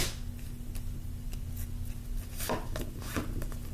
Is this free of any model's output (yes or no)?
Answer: yes